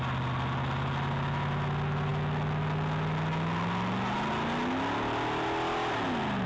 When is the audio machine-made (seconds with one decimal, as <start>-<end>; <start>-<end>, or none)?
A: none